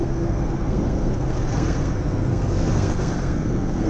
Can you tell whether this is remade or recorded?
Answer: remade